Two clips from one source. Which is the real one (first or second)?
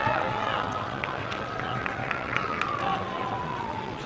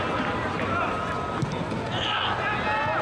second